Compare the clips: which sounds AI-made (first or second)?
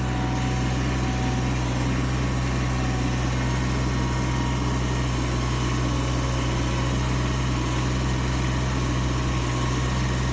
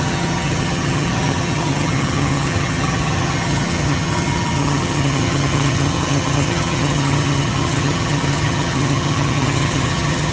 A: second